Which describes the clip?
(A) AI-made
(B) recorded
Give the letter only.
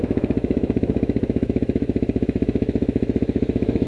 A